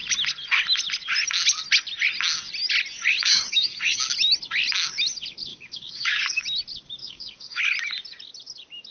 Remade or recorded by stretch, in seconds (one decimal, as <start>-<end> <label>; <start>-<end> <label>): 0.0-3.2 recorded; 3.2-4.0 remade; 4.0-5.5 recorded; 5.5-6.4 remade; 6.4-7.0 recorded; 7.0-7.6 remade; 7.6-8.9 recorded